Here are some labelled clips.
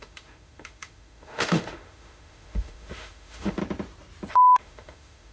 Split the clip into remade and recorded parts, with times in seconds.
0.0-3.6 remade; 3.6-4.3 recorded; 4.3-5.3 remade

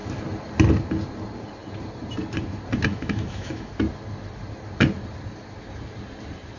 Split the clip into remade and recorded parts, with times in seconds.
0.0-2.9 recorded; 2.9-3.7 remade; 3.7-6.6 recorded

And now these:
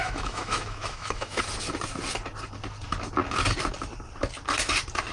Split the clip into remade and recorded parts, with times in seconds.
0.0-1.4 remade; 1.4-5.1 recorded